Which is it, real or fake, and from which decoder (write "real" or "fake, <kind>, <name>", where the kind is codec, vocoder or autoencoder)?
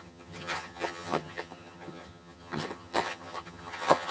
fake, vocoder, HiFi-GAN